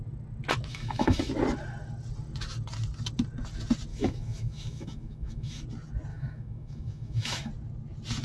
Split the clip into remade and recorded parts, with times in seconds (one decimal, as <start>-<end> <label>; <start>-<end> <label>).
0.0-0.7 recorded; 0.7-1.3 remade; 1.3-3.9 recorded; 3.9-5.6 remade; 5.6-6.1 recorded; 6.1-7.5 remade; 7.5-8.2 recorded